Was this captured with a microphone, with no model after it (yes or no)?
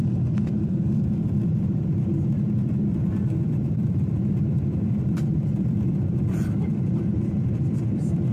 no